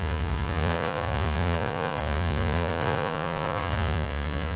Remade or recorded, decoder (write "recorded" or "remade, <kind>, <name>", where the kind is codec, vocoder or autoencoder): remade, vocoder, Vocos